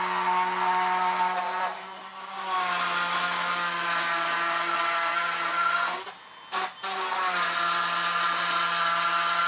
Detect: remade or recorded recorded